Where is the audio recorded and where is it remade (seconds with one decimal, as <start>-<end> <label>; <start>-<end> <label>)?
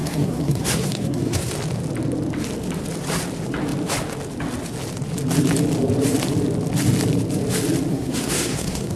0.0-1.5 remade; 1.5-7.9 recorded; 7.9-9.0 remade